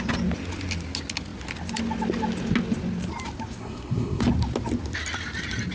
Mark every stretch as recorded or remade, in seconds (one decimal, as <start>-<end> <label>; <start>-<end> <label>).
0.0-3.6 recorded; 3.6-4.2 remade; 4.2-5.7 recorded